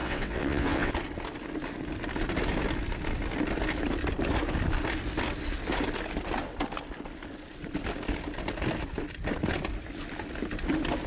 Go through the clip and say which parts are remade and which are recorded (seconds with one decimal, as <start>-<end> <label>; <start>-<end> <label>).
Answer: 0.0-0.9 remade; 0.9-11.1 recorded